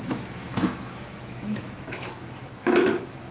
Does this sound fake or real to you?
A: fake